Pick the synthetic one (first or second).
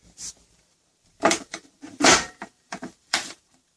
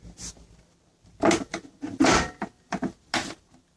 first